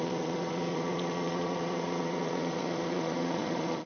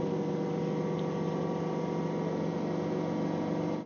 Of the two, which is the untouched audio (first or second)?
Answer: second